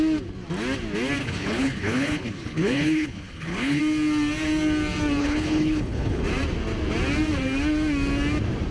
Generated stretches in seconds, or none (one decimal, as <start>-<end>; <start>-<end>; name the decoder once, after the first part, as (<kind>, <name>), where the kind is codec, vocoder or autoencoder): 1.2-3.8 (codec, HILCodec); 5.2-6.2

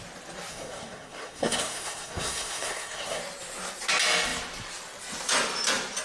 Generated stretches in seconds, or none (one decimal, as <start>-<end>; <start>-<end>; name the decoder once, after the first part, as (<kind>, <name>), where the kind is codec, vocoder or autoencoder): 0.5-3.2 (codec, SNAC)

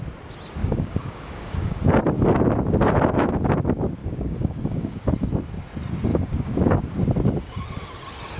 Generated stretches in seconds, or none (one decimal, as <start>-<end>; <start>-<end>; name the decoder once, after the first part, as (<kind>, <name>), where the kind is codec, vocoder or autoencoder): 0.6-1.9 (codec, DAC); 4.0-5.1; 6.1-6.8